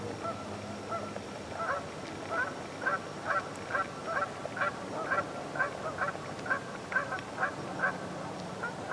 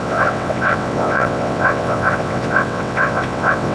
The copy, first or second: second